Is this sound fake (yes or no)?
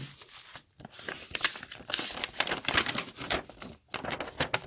no